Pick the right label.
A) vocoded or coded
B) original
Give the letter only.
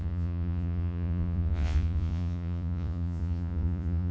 A